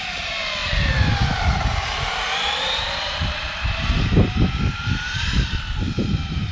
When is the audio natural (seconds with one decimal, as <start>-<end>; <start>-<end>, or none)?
none